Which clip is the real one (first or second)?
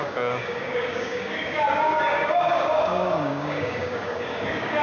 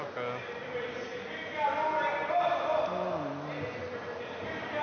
second